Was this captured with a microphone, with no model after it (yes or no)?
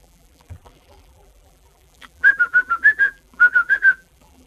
no